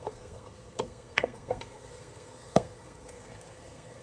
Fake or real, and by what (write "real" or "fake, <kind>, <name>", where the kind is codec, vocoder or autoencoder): fake, codec, SNAC